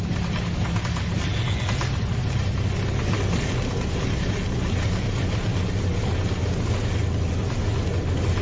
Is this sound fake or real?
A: real